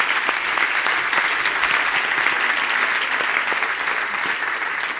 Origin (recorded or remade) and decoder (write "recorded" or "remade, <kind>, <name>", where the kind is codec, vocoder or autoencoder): recorded